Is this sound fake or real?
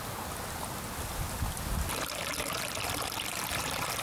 real